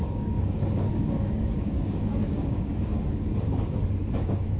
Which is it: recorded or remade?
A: remade